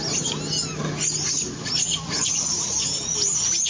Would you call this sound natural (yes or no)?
yes